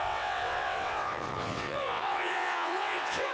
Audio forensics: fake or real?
fake